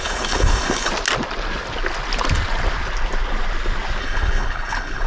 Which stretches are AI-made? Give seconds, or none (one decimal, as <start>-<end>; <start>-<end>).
0.0-0.9; 4.0-5.1

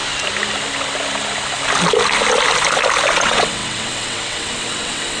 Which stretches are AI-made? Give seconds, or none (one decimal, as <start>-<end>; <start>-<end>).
3.1-5.2

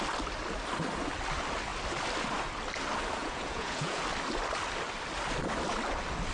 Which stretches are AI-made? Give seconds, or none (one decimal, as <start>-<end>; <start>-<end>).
3.2-4.0

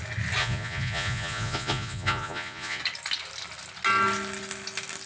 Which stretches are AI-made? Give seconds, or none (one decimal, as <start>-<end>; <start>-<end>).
0.4-2.8